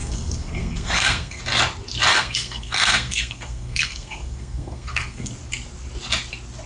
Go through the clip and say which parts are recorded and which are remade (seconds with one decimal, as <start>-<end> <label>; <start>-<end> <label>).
0.0-1.4 remade; 1.4-2.1 recorded; 2.1-5.3 remade; 5.3-6.7 recorded